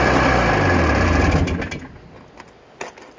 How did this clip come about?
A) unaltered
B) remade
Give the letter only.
A